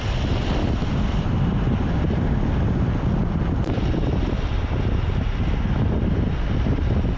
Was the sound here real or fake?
real